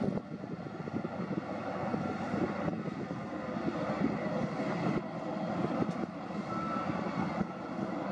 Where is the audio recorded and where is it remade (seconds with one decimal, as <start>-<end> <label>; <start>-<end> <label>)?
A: 0.0-8.1 recorded